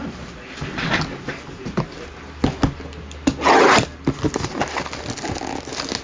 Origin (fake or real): real